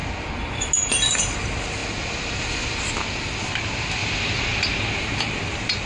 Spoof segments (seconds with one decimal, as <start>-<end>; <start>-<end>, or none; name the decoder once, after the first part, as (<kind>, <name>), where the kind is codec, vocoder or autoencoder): 4.0-5.4 (vocoder, BigVGAN v2)